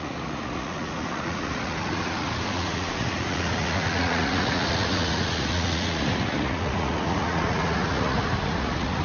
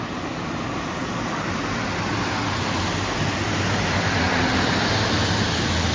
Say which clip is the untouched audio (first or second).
second